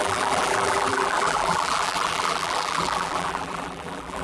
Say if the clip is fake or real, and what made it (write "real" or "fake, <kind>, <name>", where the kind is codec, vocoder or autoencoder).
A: fake, vocoder, BigVGAN v2